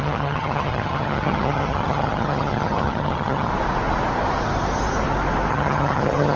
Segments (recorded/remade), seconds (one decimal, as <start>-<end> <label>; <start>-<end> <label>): 0.0-3.5 remade; 3.5-5.5 recorded; 5.5-6.4 remade